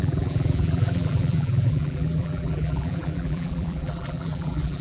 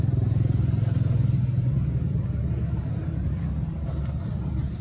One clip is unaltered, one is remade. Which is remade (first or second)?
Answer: first